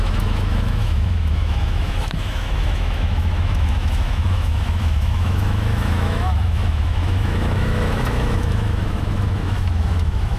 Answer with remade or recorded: remade